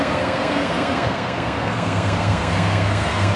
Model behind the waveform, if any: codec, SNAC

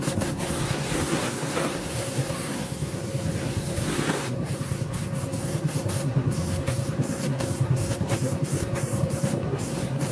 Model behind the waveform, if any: codec, SNAC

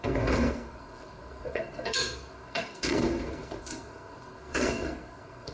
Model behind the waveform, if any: codec, SNAC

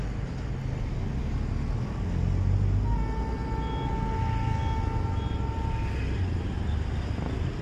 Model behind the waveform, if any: none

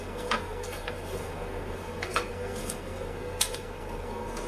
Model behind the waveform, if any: codec, SNAC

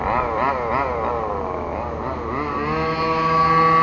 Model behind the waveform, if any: none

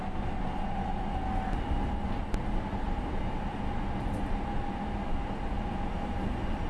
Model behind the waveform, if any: none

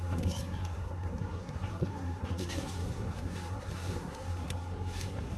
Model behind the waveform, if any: codec, SNAC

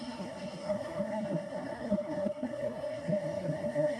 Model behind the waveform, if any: codec, SNAC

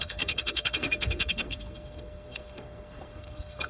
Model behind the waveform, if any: codec, SNAC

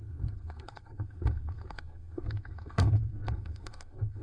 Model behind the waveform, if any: codec, SNAC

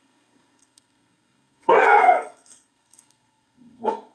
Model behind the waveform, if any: codec, SNAC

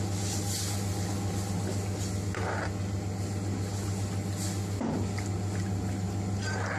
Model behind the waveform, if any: none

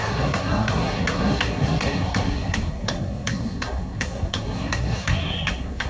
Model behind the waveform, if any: codec, SNAC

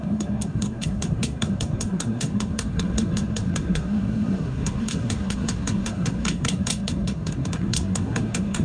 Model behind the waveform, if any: codec, SNAC